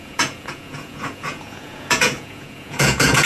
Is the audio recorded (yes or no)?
no